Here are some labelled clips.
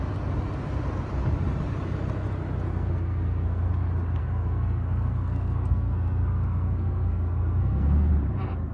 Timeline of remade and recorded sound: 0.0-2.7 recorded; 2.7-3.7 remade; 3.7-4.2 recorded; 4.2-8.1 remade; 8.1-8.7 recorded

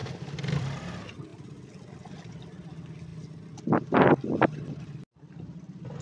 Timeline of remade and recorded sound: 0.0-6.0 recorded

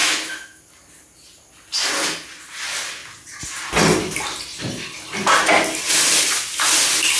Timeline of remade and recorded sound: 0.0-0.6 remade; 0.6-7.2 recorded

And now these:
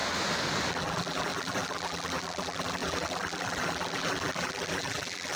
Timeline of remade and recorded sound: 0.0-0.7 recorded; 0.7-5.4 remade

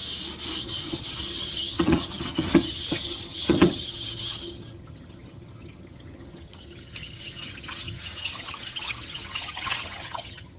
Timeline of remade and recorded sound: 0.0-0.6 recorded; 0.6-10.6 remade